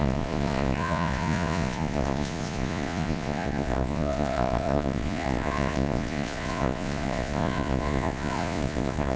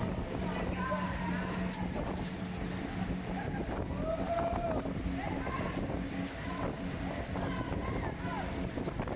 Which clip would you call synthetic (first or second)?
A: first